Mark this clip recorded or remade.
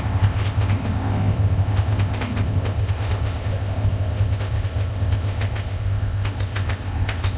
remade